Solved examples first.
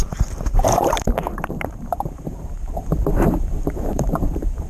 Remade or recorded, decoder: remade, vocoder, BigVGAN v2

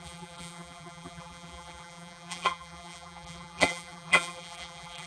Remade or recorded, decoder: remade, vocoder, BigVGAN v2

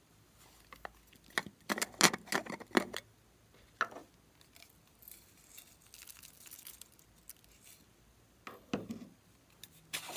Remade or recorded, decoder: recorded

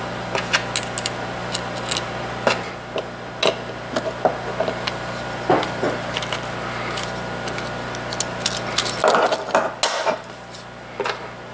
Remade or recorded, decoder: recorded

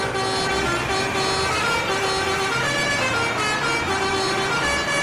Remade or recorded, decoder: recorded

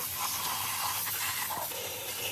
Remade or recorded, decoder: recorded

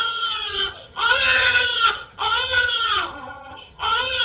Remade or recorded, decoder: remade, vocoder, HiFi-GAN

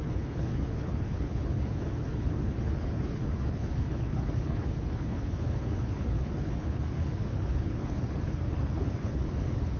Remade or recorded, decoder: remade, codec, HILCodec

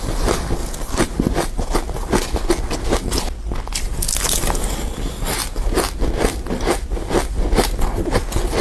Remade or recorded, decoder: recorded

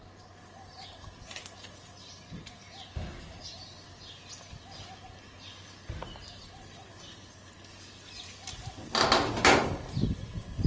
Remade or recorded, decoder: recorded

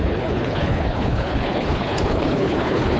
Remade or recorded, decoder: remade, codec, HILCodec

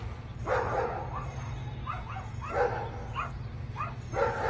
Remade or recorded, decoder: recorded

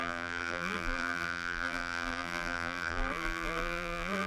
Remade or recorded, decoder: remade, vocoder, BigVGAN v2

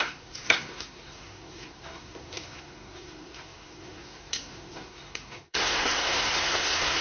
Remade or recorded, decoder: remade, codec, SNAC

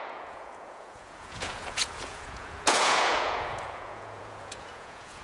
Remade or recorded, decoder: remade, vocoder, Vocos